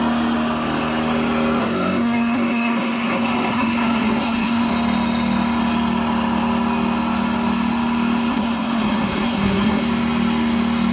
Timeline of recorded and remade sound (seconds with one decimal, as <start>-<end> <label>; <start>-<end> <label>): 0.0-1.6 recorded; 1.6-4.7 remade; 4.7-8.3 recorded; 8.3-9.8 remade; 9.8-10.9 recorded